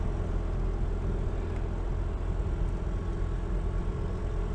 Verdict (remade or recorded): recorded